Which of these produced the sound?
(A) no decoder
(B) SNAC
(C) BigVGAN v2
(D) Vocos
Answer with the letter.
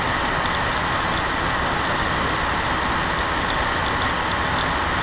A